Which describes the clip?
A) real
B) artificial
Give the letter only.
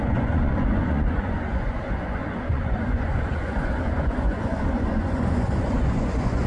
B